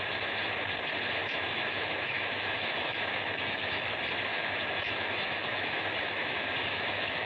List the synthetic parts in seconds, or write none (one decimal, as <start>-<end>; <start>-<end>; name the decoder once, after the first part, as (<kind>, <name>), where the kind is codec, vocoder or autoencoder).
1.2-3.9 (autoencoder, DAC-VAE); 4.3-7.3